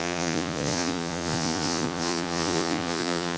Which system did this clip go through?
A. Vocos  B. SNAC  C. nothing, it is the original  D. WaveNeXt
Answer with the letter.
A